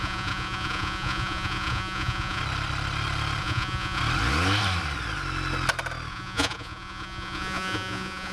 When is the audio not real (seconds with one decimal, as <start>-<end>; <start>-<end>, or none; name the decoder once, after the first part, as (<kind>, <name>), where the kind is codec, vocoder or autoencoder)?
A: 0.0-2.4 (vocoder, Vocos); 3.4-4.0; 6.1-8.3